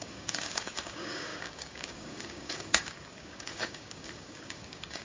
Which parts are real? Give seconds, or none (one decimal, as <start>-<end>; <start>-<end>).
none